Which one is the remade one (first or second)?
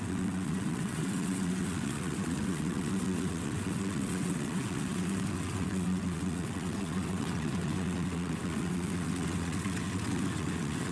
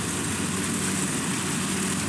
first